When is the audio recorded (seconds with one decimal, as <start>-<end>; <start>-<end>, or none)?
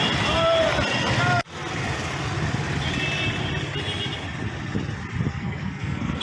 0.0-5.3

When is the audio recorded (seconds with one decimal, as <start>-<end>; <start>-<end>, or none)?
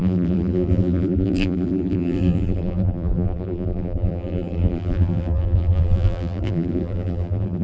none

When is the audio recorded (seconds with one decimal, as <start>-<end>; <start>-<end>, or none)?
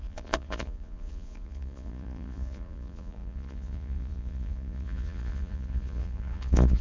none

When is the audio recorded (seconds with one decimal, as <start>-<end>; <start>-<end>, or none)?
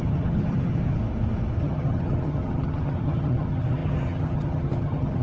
1.0-1.6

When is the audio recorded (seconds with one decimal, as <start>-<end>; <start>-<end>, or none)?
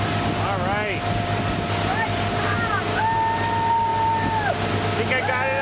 0.0-5.6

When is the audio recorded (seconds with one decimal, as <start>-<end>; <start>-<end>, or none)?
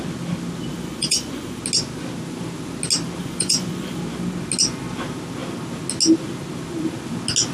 0.0-0.7; 1.6-3.2; 4.0-7.5